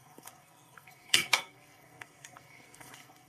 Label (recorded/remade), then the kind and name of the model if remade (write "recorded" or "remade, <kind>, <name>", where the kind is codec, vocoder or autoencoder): remade, codec, SNAC